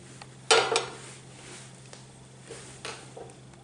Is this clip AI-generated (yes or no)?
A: no